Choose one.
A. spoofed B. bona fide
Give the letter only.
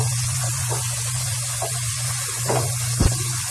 A